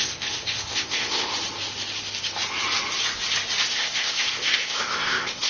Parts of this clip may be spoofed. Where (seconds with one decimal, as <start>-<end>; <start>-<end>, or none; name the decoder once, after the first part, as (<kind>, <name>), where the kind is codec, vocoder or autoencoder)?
0.0-1.3 (codec, ZipCodec); 3.7-5.5